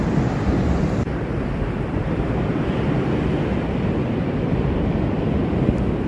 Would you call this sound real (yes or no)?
yes